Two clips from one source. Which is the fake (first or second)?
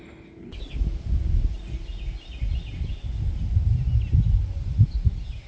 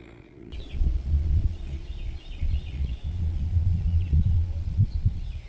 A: second